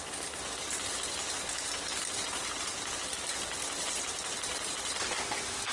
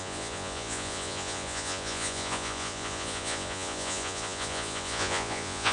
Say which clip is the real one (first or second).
first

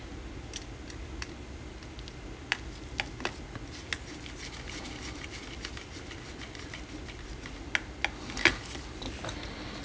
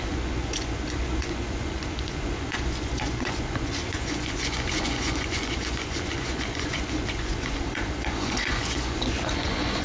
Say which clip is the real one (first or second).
first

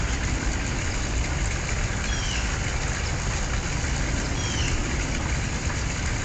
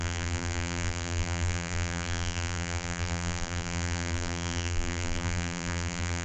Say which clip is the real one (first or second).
first